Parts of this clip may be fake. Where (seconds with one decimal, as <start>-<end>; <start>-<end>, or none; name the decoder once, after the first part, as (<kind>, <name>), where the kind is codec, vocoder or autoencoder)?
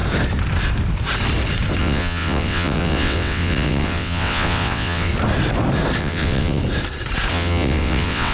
1.8-5.1 (vocoder, WaveNeXt); 6.0-6.6; 7.3-8.3